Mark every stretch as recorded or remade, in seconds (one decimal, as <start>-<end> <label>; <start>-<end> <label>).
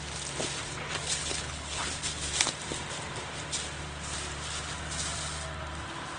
0.0-1.2 recorded; 1.2-1.8 remade; 1.8-6.2 recorded